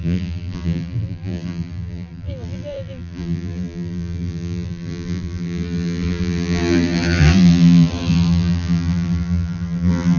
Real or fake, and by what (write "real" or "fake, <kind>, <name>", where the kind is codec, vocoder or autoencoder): fake, vocoder, BigVGAN v2